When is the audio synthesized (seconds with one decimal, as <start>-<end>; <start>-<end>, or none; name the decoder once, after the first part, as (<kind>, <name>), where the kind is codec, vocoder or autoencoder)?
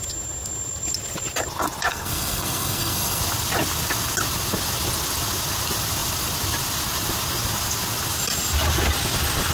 1.9-3.2 (codec, SNAC)